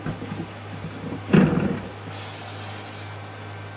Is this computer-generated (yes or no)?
no